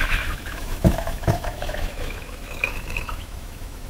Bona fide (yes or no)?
no